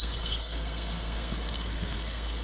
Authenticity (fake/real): fake